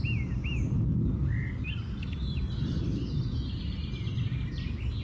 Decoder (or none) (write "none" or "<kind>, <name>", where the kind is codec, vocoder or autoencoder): none